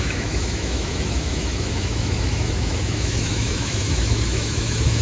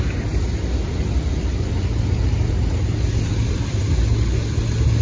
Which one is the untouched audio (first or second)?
second